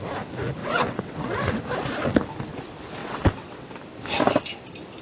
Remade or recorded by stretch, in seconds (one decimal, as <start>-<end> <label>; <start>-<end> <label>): 0.0-0.6 recorded; 0.6-1.6 remade; 1.6-3.0 recorded; 3.0-3.7 remade; 3.7-5.0 recorded